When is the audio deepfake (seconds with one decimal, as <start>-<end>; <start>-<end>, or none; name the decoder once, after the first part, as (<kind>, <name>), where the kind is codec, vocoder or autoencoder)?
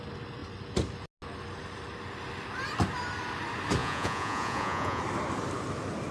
3.8-5.0 (vocoder, Vocos)